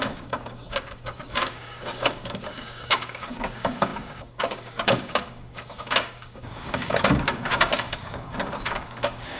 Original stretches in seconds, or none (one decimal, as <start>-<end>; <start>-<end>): none